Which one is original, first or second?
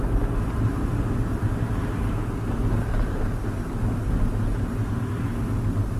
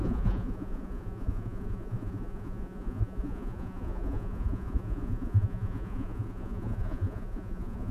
first